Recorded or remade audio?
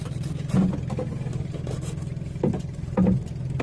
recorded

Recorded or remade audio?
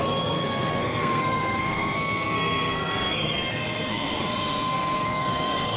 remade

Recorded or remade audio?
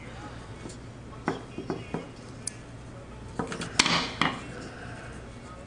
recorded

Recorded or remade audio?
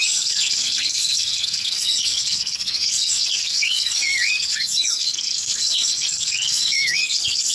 remade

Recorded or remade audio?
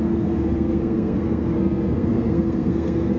remade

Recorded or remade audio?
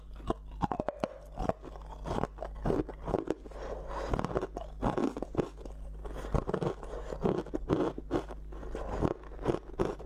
recorded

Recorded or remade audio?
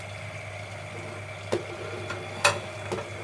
recorded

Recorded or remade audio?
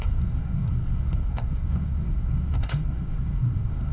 remade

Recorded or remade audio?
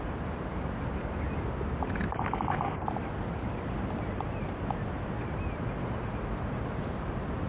recorded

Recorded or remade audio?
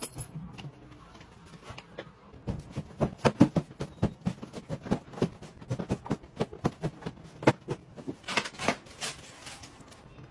recorded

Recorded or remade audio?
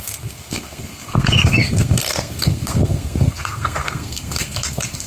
remade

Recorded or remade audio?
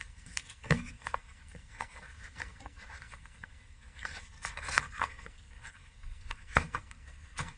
remade